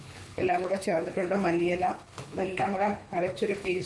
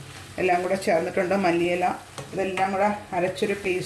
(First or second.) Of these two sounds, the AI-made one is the first